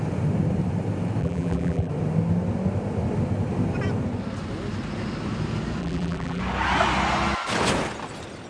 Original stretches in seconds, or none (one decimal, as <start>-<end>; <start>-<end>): 0.0-1.2; 1.9-5.8; 6.4-8.5